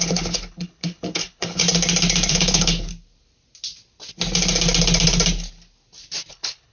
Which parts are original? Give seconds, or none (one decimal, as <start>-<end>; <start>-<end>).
1.6-2.3; 2.9-6.3